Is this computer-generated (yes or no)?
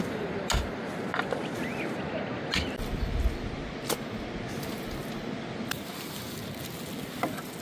no